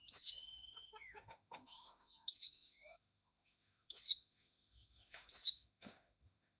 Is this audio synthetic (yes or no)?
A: yes